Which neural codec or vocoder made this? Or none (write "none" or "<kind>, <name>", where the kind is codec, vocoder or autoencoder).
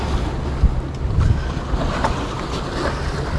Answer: none